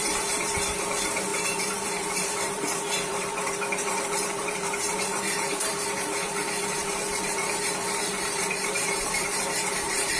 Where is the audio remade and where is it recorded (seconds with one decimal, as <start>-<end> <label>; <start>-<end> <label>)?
0.0-10.2 remade